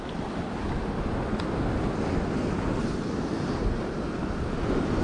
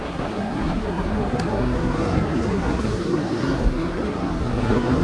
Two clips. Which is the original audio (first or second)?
first